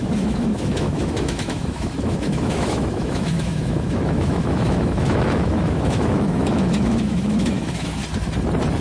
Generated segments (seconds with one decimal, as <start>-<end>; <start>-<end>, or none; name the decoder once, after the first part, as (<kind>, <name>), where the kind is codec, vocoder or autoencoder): 0.0-8.0 (autoencoder, DAC-VAE)